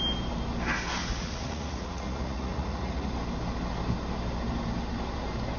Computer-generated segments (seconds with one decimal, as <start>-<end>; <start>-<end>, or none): 1.0-3.1